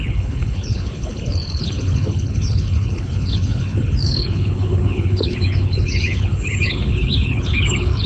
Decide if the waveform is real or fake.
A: fake